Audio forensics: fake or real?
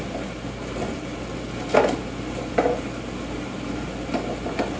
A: real